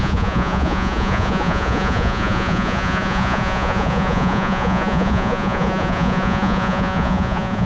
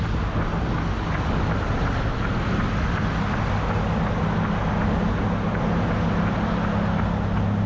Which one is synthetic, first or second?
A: first